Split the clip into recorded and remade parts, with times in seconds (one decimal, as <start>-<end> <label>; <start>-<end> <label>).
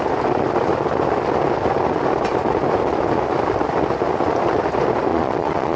0.0-5.1 recorded; 5.1-5.8 remade